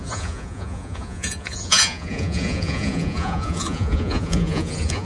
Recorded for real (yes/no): no